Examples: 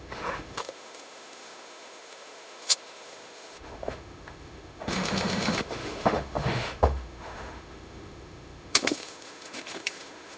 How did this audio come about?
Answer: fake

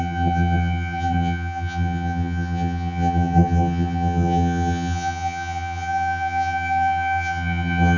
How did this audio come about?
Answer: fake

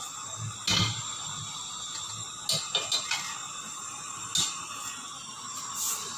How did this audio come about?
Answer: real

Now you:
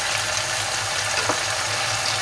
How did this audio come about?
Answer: real